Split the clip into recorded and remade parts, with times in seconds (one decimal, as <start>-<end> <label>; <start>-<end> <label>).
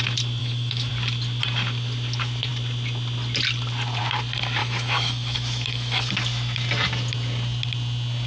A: 0.0-0.4 recorded; 0.4-0.9 remade; 0.9-4.6 recorded; 4.6-6.1 remade; 6.1-8.3 recorded